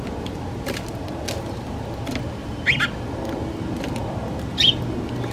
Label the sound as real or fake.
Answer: real